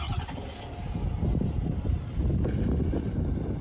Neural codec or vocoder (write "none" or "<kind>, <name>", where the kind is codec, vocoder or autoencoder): none